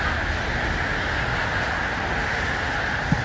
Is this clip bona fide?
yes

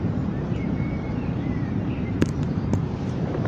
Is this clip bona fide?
no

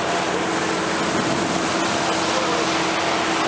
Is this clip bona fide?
yes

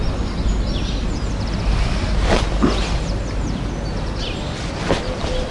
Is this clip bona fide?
yes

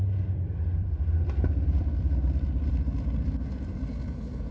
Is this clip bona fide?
no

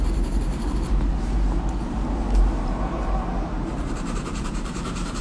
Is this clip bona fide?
no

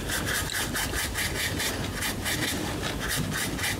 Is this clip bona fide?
yes